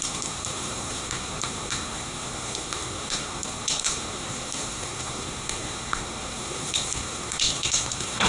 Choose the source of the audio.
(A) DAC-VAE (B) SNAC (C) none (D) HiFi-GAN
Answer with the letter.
B